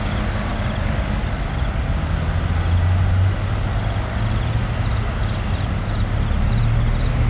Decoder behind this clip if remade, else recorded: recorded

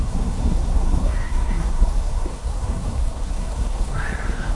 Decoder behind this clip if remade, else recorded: remade, codec, SNAC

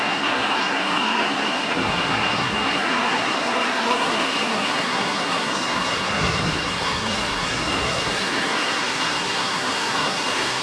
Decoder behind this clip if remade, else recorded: remade, codec, SNAC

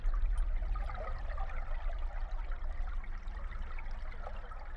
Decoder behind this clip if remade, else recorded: recorded